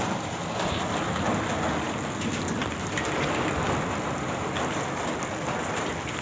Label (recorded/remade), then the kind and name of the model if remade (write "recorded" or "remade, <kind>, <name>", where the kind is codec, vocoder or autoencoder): remade, vocoder, BigVGAN v2